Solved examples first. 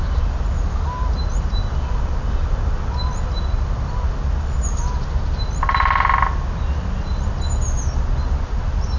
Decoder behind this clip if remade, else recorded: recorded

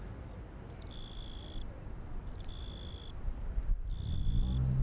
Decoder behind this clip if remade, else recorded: recorded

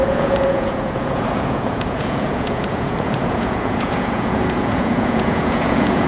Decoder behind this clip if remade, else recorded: remade, vocoder, Vocos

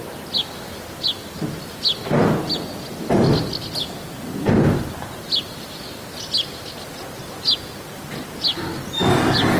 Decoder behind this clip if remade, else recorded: recorded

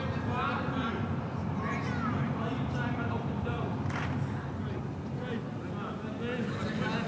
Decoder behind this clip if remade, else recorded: recorded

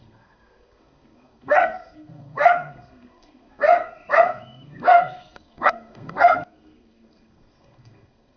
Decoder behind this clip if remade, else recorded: remade, codec, SNAC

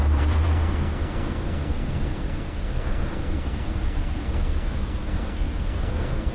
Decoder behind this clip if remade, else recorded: remade, codec, SNAC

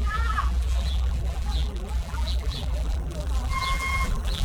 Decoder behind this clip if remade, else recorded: remade, vocoder, BigVGAN v2